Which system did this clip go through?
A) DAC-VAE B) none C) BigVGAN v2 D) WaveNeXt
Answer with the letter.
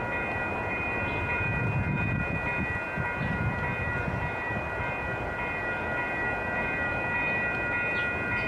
B